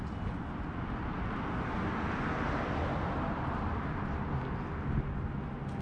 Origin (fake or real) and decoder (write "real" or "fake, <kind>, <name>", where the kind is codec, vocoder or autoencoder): real